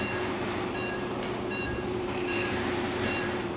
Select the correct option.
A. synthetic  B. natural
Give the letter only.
A